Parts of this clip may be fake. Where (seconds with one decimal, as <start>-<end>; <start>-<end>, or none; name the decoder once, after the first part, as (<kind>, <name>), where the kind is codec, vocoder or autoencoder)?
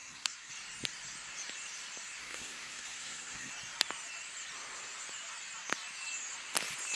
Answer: 0.0-0.5 (codec, SNAC); 2.2-3.5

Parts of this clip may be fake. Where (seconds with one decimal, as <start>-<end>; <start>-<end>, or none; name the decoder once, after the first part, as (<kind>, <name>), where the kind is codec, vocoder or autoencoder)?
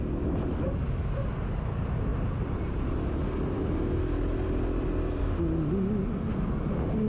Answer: none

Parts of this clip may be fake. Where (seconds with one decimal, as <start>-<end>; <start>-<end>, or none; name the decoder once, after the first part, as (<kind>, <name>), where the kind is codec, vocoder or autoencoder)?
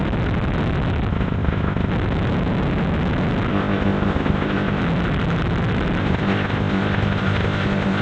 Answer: 1.1-1.9 (codec, ZipCodec); 3.5-4.8; 6.0-8.0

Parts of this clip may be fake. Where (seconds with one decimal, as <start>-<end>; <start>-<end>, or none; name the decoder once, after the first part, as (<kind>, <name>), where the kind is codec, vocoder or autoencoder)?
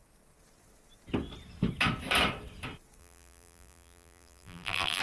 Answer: 3.0-5.0 (vocoder, BigVGAN v2)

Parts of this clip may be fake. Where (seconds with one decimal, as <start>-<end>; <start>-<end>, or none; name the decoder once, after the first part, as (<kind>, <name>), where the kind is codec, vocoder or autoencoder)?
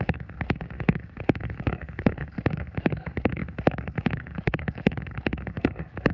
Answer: 0.0-6.1 (codec, SNAC)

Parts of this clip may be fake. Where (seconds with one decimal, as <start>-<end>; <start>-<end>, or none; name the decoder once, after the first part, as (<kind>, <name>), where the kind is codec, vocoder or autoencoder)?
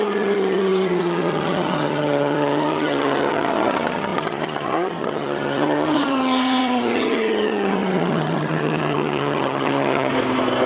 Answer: 0.0-10.1 (vocoder, HiFi-GAN)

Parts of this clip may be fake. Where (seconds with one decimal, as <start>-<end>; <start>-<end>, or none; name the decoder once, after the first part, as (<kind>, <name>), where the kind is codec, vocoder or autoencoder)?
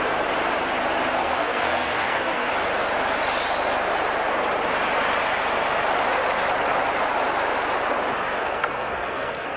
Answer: 1.2-2.5 (codec, SNAC); 8.4-9.6